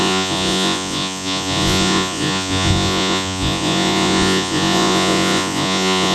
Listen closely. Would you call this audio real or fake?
fake